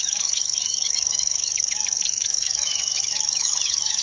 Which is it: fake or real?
fake